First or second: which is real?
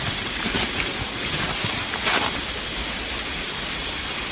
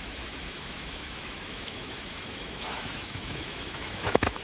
first